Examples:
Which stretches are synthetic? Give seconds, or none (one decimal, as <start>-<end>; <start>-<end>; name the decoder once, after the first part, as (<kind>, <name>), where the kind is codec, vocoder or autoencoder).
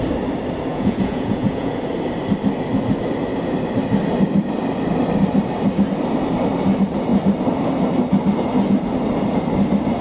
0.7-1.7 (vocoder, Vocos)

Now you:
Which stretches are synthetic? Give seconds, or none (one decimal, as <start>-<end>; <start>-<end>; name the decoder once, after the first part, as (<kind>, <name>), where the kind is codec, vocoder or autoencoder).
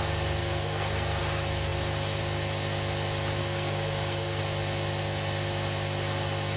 0.4-1.2 (codec, SNAC); 3.4-4.4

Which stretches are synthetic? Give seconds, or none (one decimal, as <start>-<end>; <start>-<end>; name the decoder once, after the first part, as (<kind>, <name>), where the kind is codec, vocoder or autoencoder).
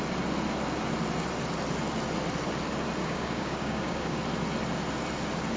3.0-4.2 (codec, DAC)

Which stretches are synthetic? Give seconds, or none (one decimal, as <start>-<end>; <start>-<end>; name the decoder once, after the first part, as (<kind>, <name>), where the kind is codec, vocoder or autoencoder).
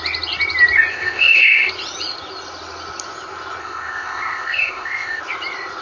0.9-1.7 (codec, ZipCodec); 3.6-5.2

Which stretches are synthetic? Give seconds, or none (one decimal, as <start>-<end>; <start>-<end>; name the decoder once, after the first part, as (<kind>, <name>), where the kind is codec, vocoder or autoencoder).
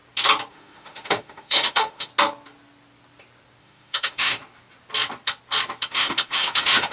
0.5-2.1 (autoencoder, DAC-VAE); 3.6-4.4; 5.9-6.9